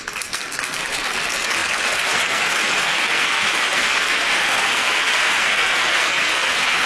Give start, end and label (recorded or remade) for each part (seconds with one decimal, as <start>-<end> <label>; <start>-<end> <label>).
0.0-6.9 remade